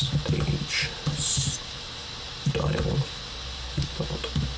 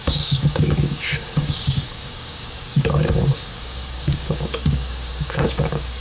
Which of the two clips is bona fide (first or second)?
first